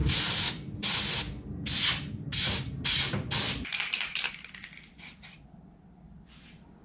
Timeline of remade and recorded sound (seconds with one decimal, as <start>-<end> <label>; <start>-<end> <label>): 0.0-1.0 remade; 1.0-3.7 recorded; 3.7-5.4 remade; 5.4-6.8 recorded